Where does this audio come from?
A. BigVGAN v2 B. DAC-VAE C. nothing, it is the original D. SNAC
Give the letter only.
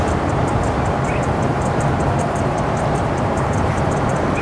A